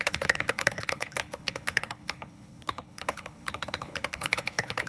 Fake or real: fake